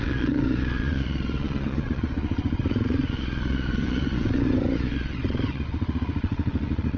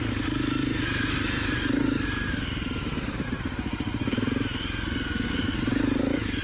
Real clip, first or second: second